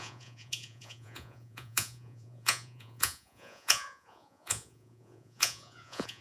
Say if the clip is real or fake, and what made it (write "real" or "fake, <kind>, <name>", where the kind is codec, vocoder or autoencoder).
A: fake, vocoder, Vocos